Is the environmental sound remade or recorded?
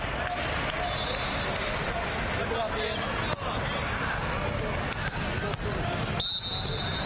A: recorded